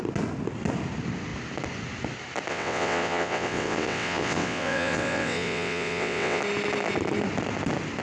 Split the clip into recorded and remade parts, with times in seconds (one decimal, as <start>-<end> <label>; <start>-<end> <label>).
0.0-2.5 recorded; 2.5-6.4 remade; 6.4-8.0 recorded